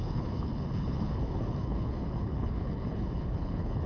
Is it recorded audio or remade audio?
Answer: remade